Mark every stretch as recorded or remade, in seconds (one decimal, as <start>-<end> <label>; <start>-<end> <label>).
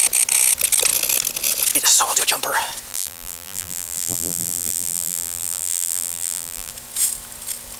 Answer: 0.0-2.9 recorded; 2.9-6.7 remade; 6.7-7.8 recorded